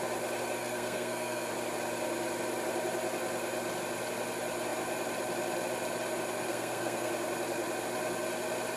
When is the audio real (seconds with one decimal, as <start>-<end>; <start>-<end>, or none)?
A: 0.0-0.6; 1.5-6.5; 7.1-8.8